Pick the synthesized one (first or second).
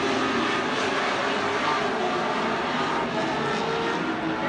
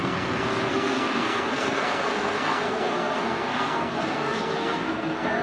second